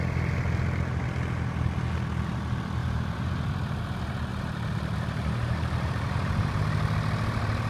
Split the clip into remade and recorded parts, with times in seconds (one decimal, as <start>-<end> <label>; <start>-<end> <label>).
0.0-2.8 recorded; 2.8-3.5 remade; 3.5-4.3 recorded; 4.3-6.5 remade; 6.5-7.7 recorded